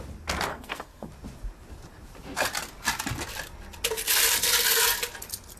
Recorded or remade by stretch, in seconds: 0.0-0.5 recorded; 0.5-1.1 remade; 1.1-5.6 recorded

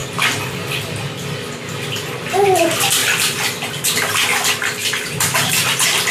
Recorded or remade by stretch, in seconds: 0.0-3.0 recorded; 3.0-3.7 remade; 3.7-4.8 recorded; 4.8-5.5 remade; 5.5-6.1 recorded